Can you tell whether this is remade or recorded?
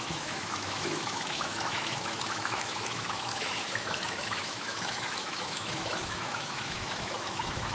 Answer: remade